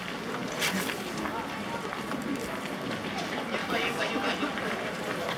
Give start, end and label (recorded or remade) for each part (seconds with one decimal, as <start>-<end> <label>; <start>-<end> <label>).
0.0-3.6 recorded; 3.6-4.1 remade; 4.1-5.4 recorded